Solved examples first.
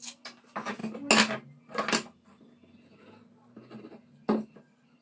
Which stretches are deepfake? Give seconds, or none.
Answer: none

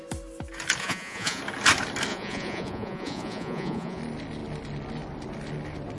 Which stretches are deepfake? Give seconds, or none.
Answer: 0.8-1.4 (vocoder, Vocos); 2.1-4.0

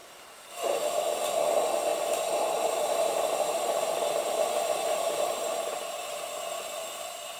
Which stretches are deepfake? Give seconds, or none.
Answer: 0.0-1.0 (vocoder, BigVGAN v2); 1.9-6.3

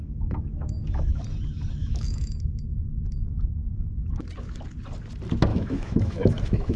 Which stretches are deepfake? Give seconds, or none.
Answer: 0.0-1.2 (autoencoder, DAC-VAE); 1.8-4.2; 5.5-6.8

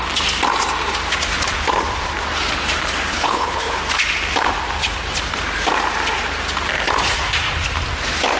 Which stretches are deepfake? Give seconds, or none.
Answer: 3.1-3.8 (codec, HILCodec)

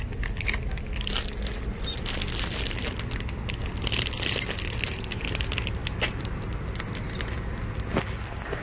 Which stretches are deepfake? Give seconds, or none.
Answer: none

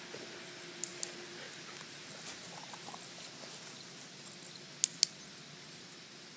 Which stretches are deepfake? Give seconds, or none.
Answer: none

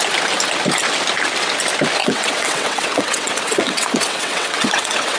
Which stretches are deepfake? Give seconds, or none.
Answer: 2.0-5.2 (vocoder, WaveNeXt)